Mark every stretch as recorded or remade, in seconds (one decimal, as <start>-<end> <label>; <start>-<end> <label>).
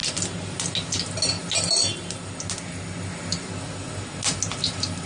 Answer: 0.0-5.1 recorded